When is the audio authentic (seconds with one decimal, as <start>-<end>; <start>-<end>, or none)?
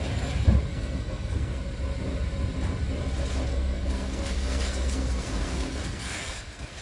0.0-0.7; 1.6-3.5